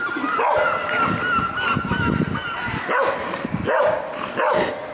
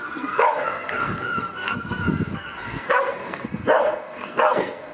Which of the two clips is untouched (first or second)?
first